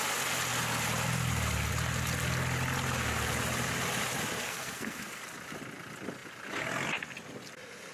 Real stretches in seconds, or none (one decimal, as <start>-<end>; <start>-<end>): 0.0-4.4; 5.2-7.9